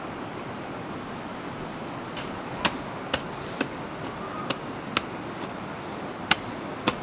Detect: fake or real real